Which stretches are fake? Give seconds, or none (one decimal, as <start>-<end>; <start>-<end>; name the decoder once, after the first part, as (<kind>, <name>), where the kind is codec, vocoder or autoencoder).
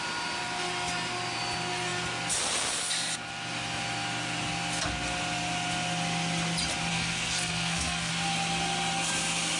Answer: 6.9-8.1 (codec, SNAC)